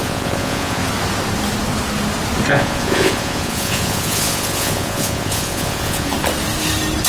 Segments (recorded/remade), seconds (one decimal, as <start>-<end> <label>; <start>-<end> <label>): 0.0-0.8 remade; 0.8-2.5 recorded; 2.5-6.1 remade; 6.1-7.1 recorded